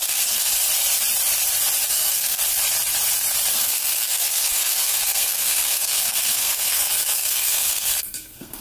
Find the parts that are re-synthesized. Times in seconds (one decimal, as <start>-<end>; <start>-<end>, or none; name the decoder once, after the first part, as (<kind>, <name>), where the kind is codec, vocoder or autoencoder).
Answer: 0.0-0.5 (codec, SNAC); 1.9-2.4; 3.5-8.6